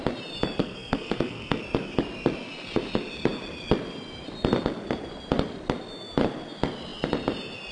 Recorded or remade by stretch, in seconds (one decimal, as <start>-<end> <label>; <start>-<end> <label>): 0.0-0.6 recorded; 0.6-1.6 remade; 1.6-7.7 recorded